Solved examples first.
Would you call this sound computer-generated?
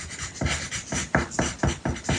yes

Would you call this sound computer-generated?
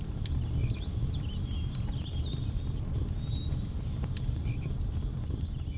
no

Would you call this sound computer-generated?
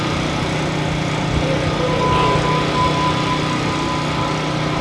no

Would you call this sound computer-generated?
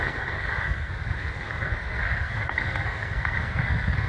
yes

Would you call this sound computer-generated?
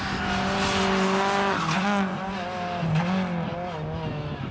no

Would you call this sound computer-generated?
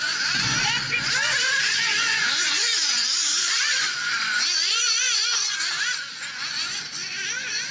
yes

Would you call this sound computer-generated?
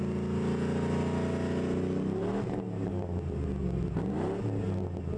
no